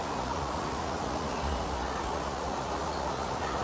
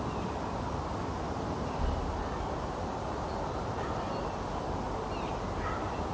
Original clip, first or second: second